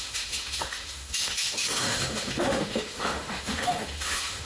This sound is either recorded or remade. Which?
remade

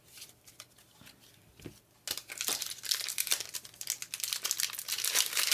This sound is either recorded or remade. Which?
recorded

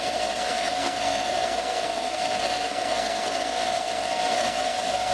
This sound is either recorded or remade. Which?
remade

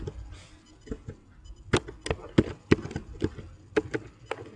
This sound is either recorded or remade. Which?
recorded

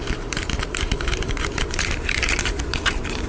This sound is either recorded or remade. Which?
remade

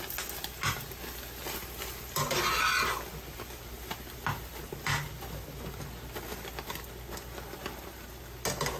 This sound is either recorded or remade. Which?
recorded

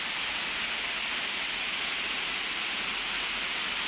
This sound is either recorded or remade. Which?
recorded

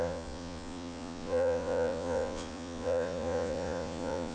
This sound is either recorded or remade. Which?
remade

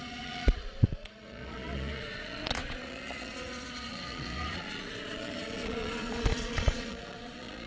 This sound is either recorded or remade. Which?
remade